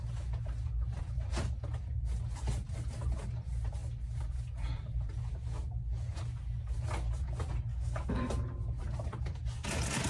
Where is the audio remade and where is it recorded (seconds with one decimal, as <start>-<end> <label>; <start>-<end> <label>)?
0.0-7.7 recorded; 7.7-8.3 remade; 8.3-10.1 recorded

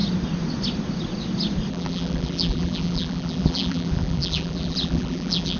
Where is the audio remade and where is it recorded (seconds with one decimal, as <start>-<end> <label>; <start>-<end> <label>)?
0.0-1.7 recorded; 1.7-5.6 remade

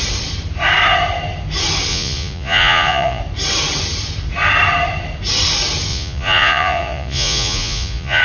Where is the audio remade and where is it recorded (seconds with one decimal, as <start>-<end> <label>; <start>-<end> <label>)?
0.0-1.9 recorded; 1.9-3.2 remade; 3.2-5.9 recorded; 5.9-8.2 remade

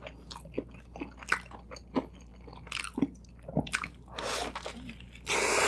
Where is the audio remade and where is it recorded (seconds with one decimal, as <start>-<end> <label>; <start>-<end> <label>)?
0.0-2.3 recorded; 2.3-3.9 remade; 3.9-5.7 recorded